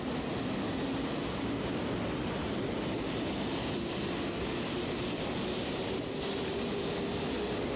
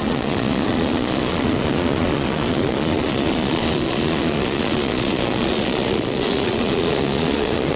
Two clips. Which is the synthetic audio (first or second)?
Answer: second